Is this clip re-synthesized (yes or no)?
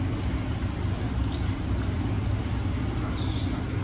no